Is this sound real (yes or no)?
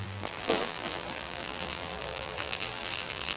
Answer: no